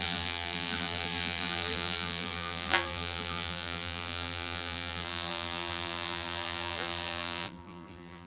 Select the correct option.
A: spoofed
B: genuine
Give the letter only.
A